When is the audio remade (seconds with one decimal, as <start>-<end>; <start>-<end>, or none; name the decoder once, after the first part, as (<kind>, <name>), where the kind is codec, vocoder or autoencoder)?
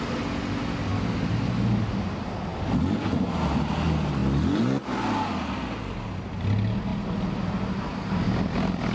none